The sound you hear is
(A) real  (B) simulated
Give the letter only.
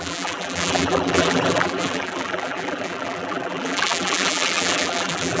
B